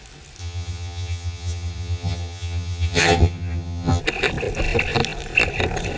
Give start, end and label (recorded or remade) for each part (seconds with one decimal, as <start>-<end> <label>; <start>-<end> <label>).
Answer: 0.0-0.4 recorded; 0.4-4.0 remade; 4.0-6.0 recorded